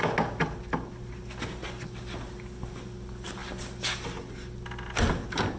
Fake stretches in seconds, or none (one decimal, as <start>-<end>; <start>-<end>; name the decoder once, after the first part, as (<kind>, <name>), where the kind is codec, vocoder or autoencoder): none

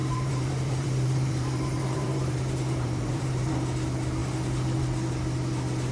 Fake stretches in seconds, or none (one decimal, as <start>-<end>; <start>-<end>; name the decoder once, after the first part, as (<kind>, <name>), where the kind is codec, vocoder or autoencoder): 0.0-3.5 (vocoder, BigVGAN v2)

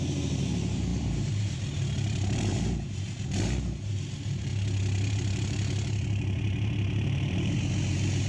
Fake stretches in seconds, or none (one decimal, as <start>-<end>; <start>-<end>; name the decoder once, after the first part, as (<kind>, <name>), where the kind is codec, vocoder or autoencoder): 0.0-4.5 (vocoder, BigVGAN v2); 5.1-8.3

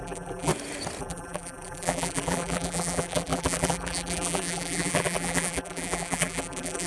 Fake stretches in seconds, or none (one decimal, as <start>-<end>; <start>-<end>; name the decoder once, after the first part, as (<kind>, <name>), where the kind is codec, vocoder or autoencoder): 0.0-0.5 (vocoder, BigVGAN v2); 1.0-6.9

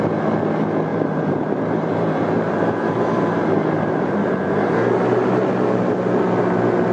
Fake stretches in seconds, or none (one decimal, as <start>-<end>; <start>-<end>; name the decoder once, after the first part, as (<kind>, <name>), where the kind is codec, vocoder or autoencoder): 0.9-4.7 (vocoder, BigVGAN v2)